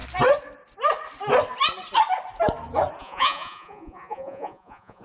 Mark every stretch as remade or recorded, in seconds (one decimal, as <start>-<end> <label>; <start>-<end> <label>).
0.0-3.0 recorded; 3.0-5.0 remade